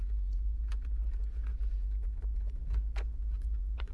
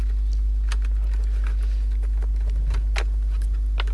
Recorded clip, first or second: second